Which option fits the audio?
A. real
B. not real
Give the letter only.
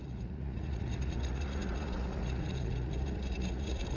B